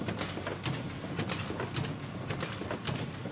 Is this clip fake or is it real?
real